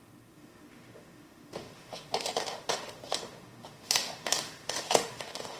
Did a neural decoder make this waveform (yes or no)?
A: yes